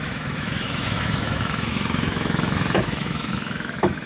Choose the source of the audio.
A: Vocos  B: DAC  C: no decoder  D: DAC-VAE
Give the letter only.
D